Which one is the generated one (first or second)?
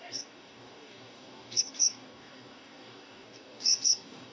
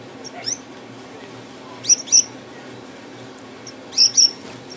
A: first